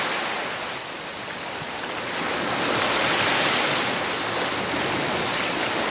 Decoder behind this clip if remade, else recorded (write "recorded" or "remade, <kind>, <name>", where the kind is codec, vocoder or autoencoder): recorded